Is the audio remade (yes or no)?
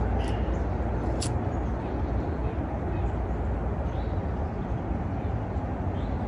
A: no